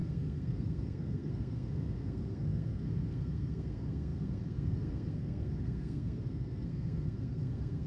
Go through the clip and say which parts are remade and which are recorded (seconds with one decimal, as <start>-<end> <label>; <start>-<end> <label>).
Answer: 0.0-7.9 remade